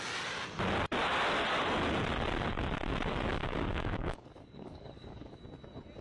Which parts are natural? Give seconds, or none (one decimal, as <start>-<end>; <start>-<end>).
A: 0.0-3.3; 5.4-6.0